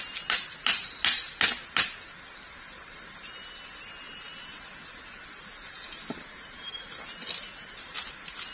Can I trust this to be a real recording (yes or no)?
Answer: yes